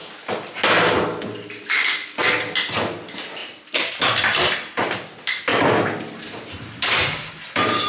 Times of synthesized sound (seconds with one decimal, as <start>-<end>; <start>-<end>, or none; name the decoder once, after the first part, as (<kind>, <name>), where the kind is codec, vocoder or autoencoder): 3.4-4.0 (vocoder, BigVGAN v2); 5.5-7.4